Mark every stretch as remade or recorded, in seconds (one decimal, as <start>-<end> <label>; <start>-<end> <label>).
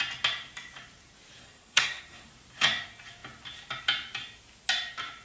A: 0.0-1.4 recorded; 1.4-2.3 remade; 2.3-5.2 recorded